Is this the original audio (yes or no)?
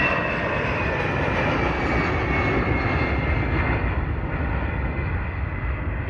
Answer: yes